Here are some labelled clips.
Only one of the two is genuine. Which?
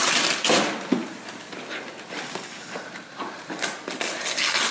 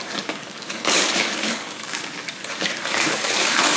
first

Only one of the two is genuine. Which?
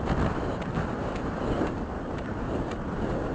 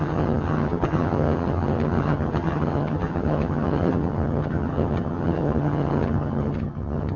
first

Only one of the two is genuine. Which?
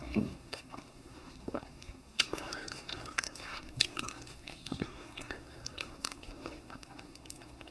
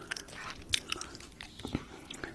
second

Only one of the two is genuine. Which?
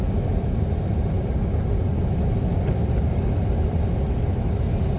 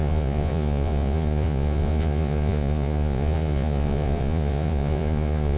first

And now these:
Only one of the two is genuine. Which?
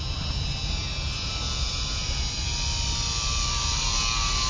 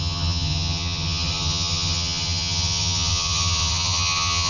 first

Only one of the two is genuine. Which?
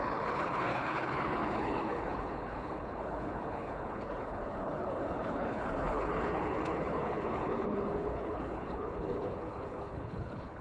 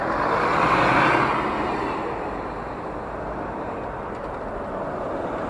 second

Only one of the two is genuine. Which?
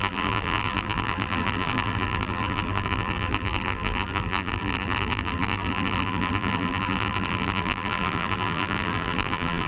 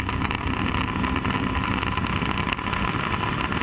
second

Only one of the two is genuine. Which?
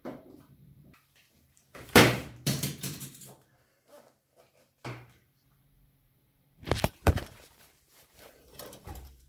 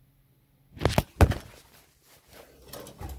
second